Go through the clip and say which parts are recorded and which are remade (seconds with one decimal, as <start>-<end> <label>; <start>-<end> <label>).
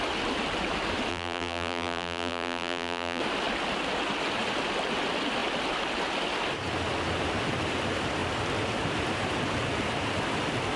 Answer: 0.0-1.1 recorded; 1.1-3.2 remade; 3.2-10.8 recorded